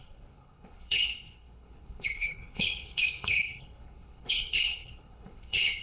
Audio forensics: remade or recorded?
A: remade